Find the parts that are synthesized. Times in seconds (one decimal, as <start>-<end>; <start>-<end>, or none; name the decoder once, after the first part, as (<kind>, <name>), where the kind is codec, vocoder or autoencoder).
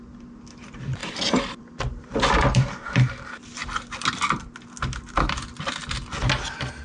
0.0-3.6 (vocoder, BigVGAN v2)